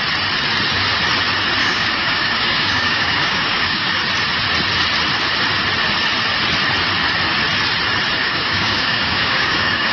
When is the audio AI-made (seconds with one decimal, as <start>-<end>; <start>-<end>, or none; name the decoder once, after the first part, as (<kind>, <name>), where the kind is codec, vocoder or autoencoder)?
1.6-3.9 (codec, DAC); 8.2-9.9